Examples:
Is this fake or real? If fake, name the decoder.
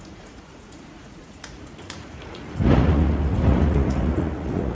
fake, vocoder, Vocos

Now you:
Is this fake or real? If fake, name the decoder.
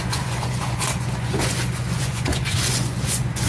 fake, vocoder, Vocos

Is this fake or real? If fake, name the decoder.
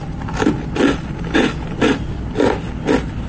real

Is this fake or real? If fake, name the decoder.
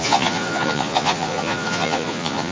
fake, vocoder, Vocos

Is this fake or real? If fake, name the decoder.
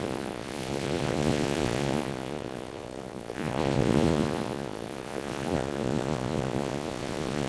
fake, vocoder, Vocos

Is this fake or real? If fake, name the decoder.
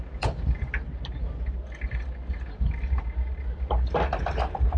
real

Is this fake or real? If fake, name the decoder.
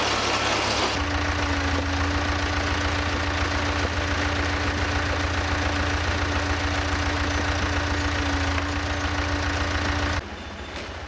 real